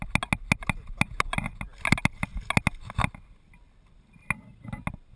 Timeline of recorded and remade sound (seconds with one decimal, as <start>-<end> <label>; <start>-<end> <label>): 0.0-5.2 recorded